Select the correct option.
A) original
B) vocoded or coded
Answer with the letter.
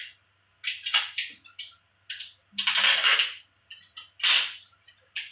A